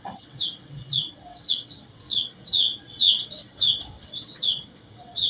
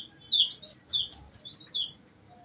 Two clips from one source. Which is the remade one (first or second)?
first